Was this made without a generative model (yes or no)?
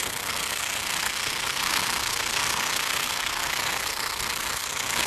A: no